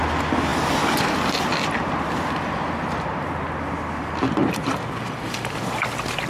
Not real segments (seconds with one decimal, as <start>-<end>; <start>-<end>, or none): 0.0-6.3